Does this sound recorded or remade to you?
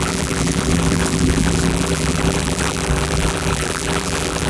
remade